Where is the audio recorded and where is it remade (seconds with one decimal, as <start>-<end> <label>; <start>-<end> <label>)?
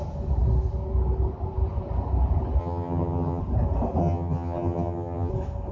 0.0-2.6 recorded; 2.6-3.4 remade; 3.4-4.0 recorded; 4.0-5.3 remade; 5.3-5.7 recorded